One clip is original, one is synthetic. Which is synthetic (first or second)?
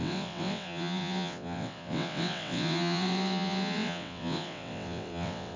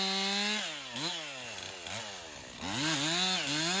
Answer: first